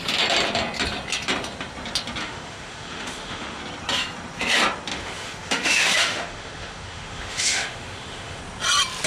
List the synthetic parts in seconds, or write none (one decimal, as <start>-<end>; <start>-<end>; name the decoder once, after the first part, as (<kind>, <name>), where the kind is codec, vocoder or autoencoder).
2.2-3.6 (autoencoder, DAC-VAE); 4.9-8.4